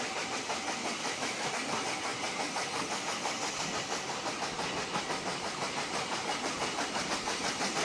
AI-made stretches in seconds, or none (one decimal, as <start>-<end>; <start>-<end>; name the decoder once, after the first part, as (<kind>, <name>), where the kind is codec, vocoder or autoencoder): 1.0-1.5 (autoencoder, DAC-VAE)